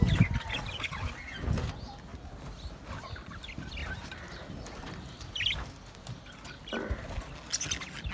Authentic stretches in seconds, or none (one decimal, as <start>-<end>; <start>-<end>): 0.0-2.1; 2.8-8.1